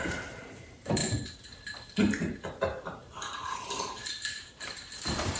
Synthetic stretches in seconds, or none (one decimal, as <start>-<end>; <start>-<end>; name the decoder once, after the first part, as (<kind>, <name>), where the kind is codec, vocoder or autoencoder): 0.0-1.0 (vocoder, BigVGAN v2); 2.6-5.4